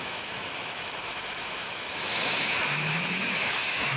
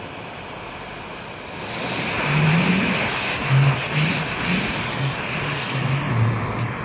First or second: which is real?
second